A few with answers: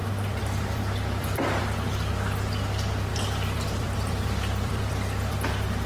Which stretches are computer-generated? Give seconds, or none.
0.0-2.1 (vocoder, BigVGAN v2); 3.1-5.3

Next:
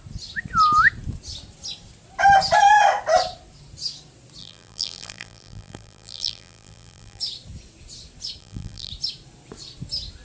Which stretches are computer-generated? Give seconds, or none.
4.4-7.2 (vocoder, BigVGAN v2); 8.4-8.9